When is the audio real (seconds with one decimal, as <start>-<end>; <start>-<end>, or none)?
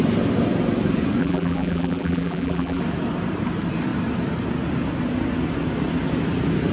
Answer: 0.0-1.2; 2.8-6.7